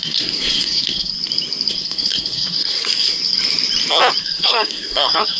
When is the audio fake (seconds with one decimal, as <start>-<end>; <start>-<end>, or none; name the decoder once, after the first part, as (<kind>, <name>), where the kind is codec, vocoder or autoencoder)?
0.0-1.1 (codec, SNAC); 1.7-3.2; 4.2-5.4

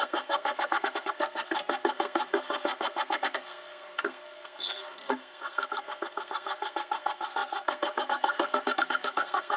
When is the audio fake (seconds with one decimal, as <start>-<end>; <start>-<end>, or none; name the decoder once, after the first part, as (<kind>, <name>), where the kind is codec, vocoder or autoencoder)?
0.0-9.6 (codec, SNAC)

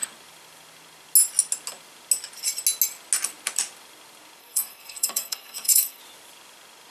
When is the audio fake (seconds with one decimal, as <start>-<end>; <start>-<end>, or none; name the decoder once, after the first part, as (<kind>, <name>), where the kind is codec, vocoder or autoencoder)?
4.4-6.0 (codec, SNAC)